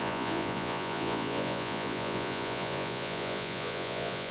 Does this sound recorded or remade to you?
remade